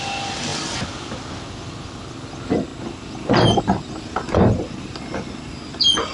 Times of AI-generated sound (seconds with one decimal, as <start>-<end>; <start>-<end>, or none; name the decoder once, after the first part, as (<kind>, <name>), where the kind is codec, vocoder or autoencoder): none